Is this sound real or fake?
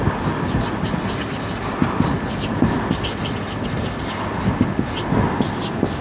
real